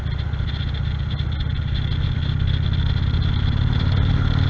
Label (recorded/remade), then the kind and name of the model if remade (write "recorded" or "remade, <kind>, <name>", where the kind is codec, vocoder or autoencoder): recorded